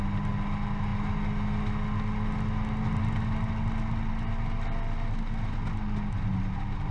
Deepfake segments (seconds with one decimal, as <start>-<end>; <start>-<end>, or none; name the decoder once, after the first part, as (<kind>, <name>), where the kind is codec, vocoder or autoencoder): none